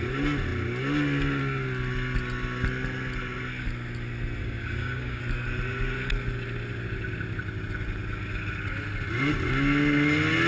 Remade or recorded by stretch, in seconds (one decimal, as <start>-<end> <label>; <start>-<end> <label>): 0.0-4.4 recorded; 4.4-5.2 remade; 5.2-10.5 recorded